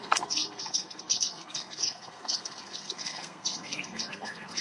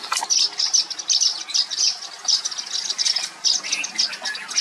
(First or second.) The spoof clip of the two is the first